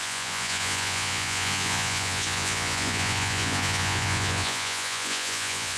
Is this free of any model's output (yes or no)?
no